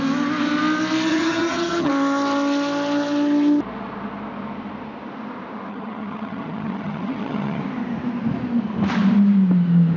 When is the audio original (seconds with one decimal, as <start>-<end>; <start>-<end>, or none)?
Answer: 0.0-1.1; 1.9-5.7; 7.6-10.0